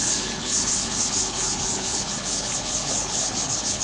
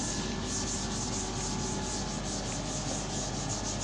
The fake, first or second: first